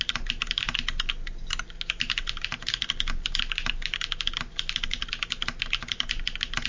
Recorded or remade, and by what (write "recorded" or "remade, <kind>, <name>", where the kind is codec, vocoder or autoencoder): recorded